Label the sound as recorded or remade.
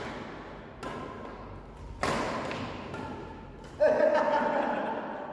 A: recorded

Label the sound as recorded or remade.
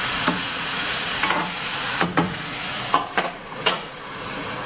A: remade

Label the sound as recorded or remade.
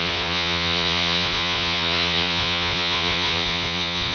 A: remade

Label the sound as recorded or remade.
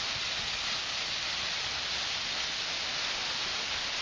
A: recorded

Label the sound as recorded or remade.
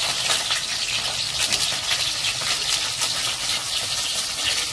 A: recorded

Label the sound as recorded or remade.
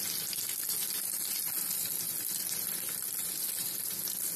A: recorded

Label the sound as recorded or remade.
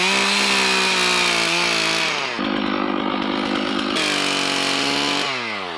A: recorded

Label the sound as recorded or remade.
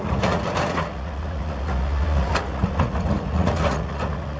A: remade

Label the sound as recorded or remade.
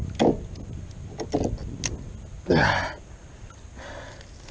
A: recorded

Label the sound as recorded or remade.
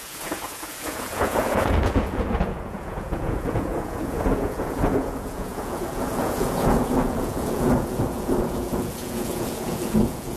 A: remade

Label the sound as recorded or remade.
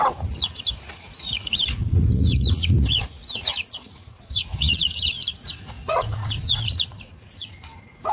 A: remade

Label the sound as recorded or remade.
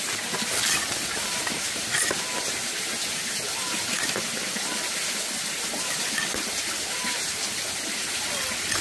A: recorded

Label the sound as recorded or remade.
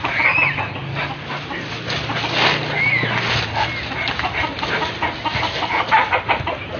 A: recorded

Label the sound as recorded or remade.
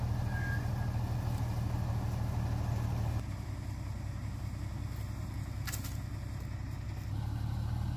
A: recorded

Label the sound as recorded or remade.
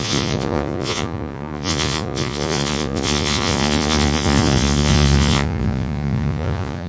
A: remade